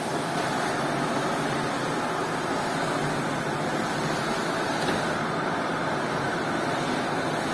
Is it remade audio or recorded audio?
recorded